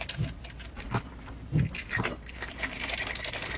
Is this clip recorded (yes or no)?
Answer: yes